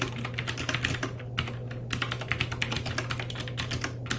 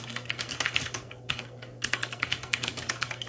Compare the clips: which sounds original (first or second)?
first